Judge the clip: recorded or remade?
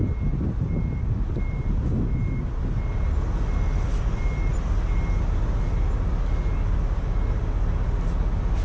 recorded